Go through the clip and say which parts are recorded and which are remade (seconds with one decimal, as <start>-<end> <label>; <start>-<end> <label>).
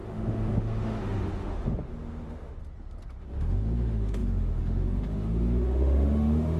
0.0-2.6 remade; 2.6-3.2 recorded; 3.2-6.6 remade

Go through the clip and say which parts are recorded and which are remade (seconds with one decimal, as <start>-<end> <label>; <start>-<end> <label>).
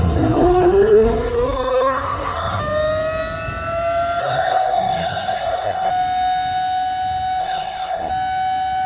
0.0-2.6 remade; 2.6-4.2 recorded; 4.2-5.9 remade; 5.9-7.4 recorded; 7.4-8.1 remade; 8.1-8.9 recorded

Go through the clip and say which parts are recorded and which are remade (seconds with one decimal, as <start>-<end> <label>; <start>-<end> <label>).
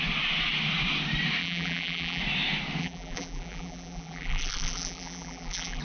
0.0-1.4 recorded; 1.4-2.2 remade; 2.2-2.8 recorded; 2.8-5.8 remade